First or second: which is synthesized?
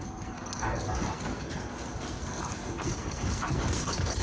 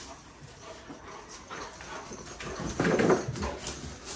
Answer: first